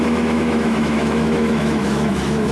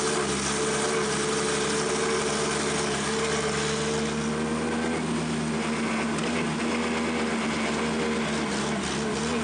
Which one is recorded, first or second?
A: second